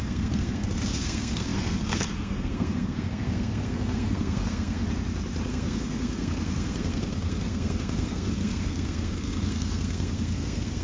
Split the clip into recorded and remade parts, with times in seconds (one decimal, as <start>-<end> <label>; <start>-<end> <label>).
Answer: 0.0-4.8 remade; 4.8-5.5 recorded; 5.5-10.8 remade